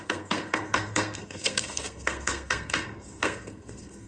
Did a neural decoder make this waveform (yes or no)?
yes